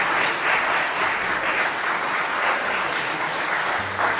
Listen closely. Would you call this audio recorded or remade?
recorded